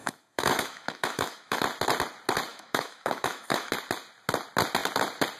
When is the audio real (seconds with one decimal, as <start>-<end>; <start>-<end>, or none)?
1.6-2.5; 3.7-5.4

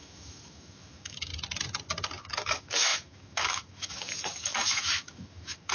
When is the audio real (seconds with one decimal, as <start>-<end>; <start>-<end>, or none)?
1.3-2.2

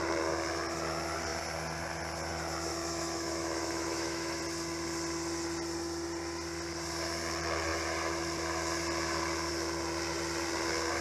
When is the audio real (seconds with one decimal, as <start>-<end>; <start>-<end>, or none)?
0.0-2.7; 4.4-11.0

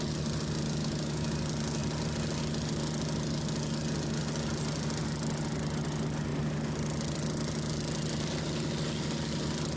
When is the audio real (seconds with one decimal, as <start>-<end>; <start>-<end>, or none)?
0.0-0.8; 1.4-9.8

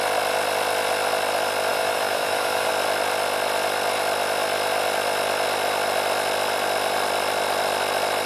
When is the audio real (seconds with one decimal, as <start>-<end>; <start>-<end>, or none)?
0.0-1.7; 2.7-8.3